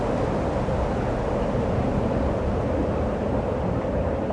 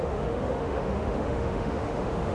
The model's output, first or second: second